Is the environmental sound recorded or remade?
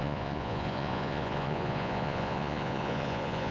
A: remade